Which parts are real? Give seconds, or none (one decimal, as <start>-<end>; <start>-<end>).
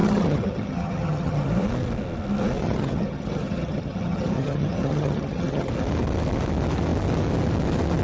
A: 1.5-2.6; 5.7-8.0